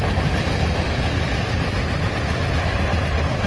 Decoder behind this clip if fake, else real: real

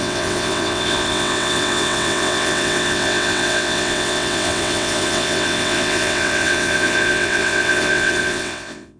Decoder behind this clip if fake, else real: fake, vocoder, WaveNeXt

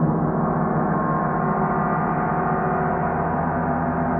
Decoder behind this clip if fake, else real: real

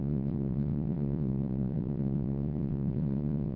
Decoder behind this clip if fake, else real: fake, vocoder, WaveNeXt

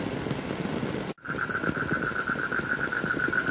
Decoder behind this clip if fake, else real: real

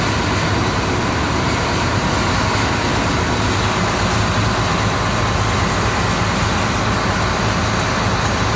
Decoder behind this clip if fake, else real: real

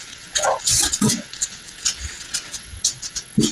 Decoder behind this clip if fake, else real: fake, vocoder, WaveNeXt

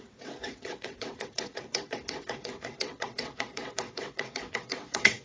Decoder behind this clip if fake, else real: fake, vocoder, WaveNeXt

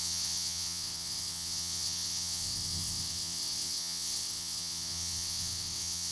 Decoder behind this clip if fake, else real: fake, vocoder, WaveNeXt